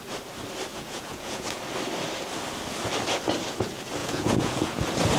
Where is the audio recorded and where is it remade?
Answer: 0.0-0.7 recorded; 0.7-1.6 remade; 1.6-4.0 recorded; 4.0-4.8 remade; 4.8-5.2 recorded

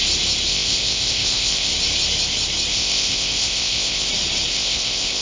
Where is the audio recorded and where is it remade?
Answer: 0.0-0.5 recorded; 0.5-1.7 remade; 1.7-2.7 recorded; 2.7-4.1 remade; 4.1-4.5 recorded; 4.5-5.2 remade

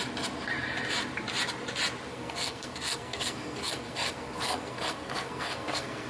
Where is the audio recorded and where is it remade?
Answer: 0.0-2.1 recorded; 2.1-6.1 remade

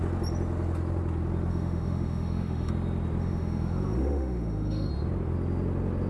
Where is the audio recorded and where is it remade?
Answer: 0.0-1.5 recorded; 1.5-2.7 remade; 2.7-3.2 recorded; 3.2-4.9 remade; 4.9-6.1 recorded

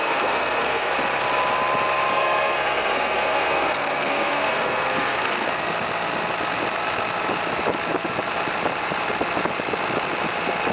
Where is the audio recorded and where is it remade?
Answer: 0.0-0.9 remade; 0.9-2.1 recorded; 2.1-5.5 remade; 5.5-10.7 recorded

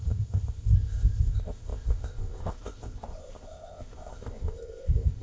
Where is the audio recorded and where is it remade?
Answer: 0.0-5.2 remade

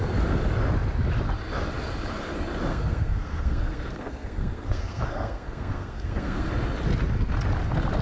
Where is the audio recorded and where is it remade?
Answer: 0.0-2.7 recorded; 2.7-6.5 remade; 6.5-8.0 recorded

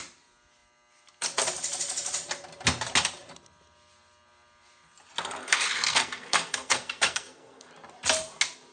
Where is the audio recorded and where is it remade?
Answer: 0.0-5.4 recorded; 5.4-7.7 remade; 7.7-8.7 recorded